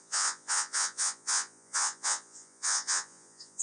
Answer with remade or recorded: remade